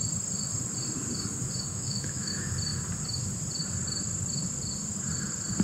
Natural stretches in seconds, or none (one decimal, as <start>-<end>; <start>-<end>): 0.0-1.7; 2.3-5.6